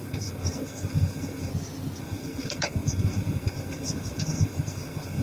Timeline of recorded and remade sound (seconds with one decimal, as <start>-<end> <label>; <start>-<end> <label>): 0.0-1.5 remade; 1.5-2.0 recorded; 2.0-5.2 remade